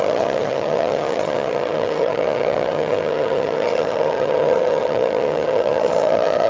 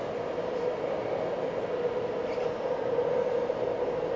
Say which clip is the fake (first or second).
first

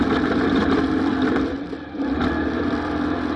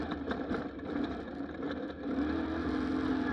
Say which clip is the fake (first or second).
first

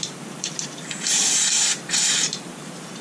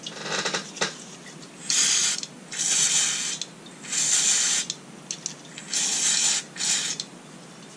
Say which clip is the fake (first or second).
first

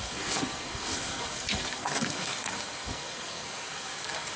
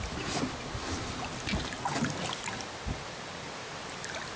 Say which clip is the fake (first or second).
first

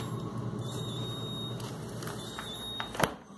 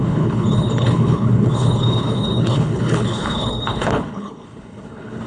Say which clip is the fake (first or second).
second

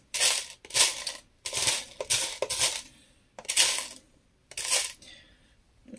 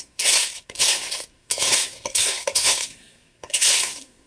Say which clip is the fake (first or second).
second